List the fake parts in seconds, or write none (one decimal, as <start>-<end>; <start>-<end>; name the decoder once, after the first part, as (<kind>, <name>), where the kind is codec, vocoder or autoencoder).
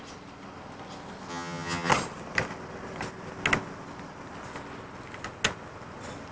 1.3-1.9 (vocoder, HiFi-GAN)